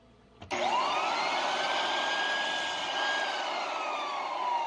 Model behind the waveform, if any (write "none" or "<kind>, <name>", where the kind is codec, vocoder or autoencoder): none